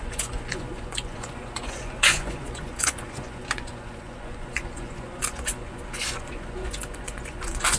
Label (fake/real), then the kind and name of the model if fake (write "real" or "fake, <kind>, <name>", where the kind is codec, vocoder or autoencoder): fake, vocoder, Vocos